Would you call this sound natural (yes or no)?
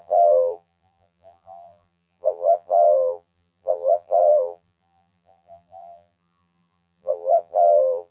no